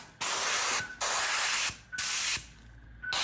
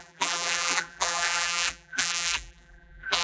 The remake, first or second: second